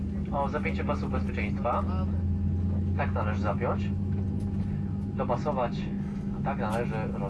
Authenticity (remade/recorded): recorded